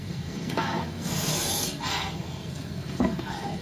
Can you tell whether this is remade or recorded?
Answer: remade